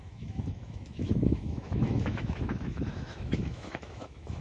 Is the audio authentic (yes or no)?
no